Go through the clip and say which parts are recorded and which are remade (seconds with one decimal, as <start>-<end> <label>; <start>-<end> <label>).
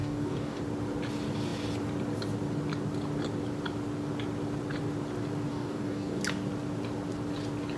0.0-0.6 remade; 0.6-5.5 recorded; 5.5-6.2 remade; 6.2-7.8 recorded